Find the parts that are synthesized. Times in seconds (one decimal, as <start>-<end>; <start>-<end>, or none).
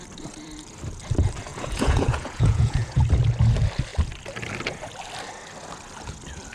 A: 1.5-3.0